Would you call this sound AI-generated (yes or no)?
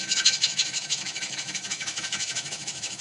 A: yes